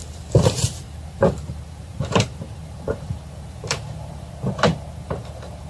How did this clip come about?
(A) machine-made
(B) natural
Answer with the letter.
A